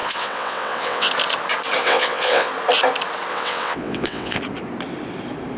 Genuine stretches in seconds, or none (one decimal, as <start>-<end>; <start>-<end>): 1.1-1.8; 2.5-3.3; 4.4-5.6